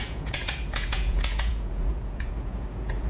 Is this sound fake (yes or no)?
yes